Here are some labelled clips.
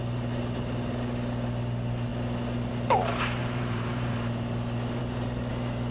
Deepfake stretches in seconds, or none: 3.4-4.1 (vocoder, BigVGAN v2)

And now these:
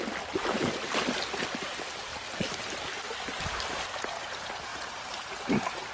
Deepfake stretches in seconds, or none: 4.7-5.4 (vocoder, BigVGAN v2)

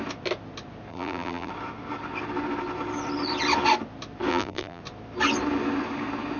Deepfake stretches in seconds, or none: 0.9-1.5 (vocoder, BigVGAN v2); 4.3-4.8